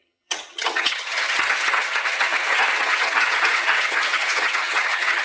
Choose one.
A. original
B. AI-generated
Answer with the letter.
B